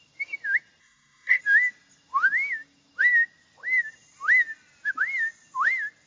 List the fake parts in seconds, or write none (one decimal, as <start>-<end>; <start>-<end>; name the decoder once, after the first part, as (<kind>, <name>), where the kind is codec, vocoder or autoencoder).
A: 0.8-1.4 (codec, SNAC)